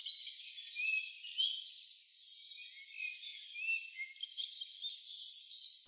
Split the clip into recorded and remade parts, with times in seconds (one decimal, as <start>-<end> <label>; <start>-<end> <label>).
0.0-5.9 recorded